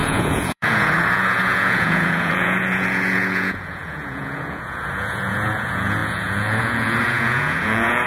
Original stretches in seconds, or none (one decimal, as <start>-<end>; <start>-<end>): none